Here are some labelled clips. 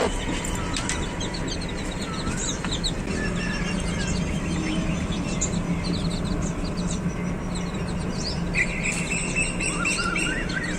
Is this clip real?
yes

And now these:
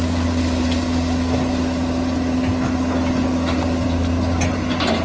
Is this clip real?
yes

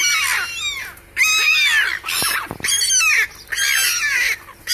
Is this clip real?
yes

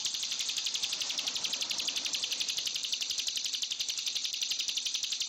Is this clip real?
no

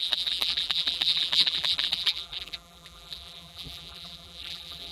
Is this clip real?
no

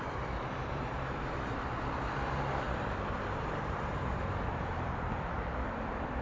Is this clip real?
no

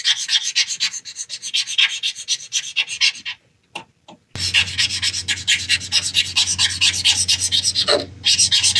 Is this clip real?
yes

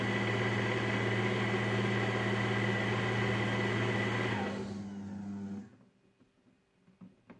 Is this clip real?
yes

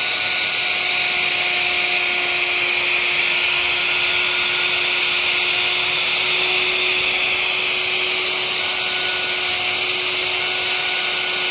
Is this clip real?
yes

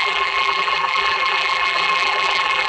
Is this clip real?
no